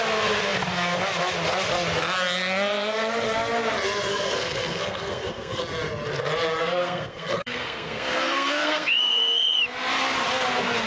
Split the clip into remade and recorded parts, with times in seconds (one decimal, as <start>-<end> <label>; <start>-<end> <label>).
0.0-4.1 recorded; 4.1-5.6 remade; 5.6-6.6 recorded; 6.6-9.6 remade; 9.6-10.9 recorded